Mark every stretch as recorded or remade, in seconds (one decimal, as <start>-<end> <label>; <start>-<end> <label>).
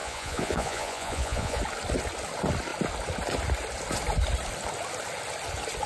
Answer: 0.0-1.6 remade; 1.6-5.9 recorded